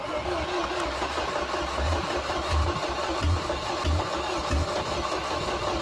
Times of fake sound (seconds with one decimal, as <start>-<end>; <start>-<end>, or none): 0.6-4.1